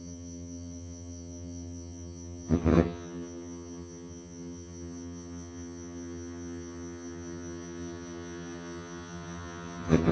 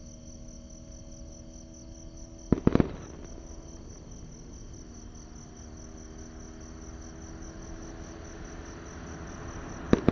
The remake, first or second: first